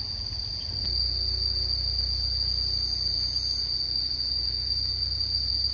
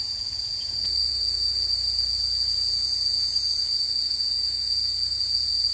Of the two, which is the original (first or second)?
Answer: first